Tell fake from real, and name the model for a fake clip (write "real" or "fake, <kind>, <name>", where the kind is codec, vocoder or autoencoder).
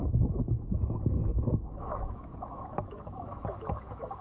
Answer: fake, autoencoder, DAC-VAE